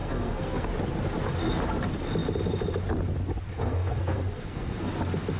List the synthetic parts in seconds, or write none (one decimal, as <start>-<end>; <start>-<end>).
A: 0.0-0.7; 3.5-4.9